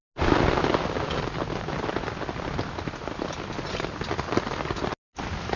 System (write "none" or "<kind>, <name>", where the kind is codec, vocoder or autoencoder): none